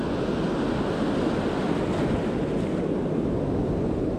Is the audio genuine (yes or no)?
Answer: yes